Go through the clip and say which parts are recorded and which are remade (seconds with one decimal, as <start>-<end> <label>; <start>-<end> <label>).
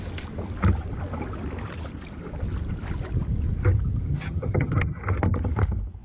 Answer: 0.0-4.1 recorded; 4.1-5.0 remade; 5.0-6.0 recorded